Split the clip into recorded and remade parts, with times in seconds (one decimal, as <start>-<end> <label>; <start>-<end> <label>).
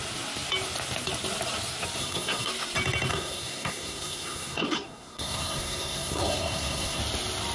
0.0-2.0 recorded; 2.0-2.5 remade; 2.5-3.1 recorded; 3.1-7.0 remade; 7.0-7.5 recorded